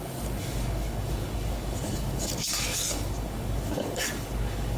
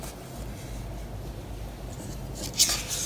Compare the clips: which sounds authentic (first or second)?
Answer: second